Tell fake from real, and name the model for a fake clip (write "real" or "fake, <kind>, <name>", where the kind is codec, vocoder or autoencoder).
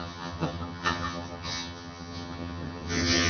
fake, vocoder, HiFi-GAN